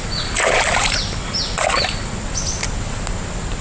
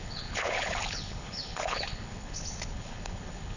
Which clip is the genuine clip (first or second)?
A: first